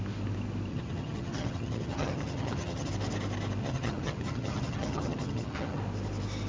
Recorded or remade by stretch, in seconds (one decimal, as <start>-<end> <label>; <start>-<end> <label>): 0.0-0.7 recorded; 0.7-2.9 remade; 2.9-3.6 recorded; 3.6-5.8 remade; 5.8-6.5 recorded